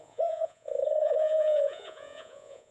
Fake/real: fake